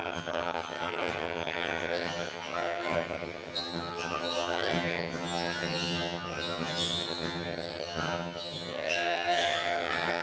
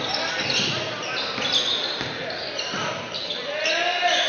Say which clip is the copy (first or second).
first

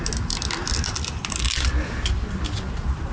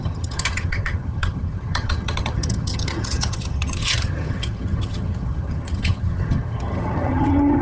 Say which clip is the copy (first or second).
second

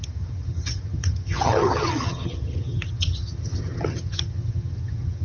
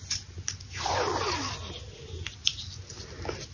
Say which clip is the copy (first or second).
first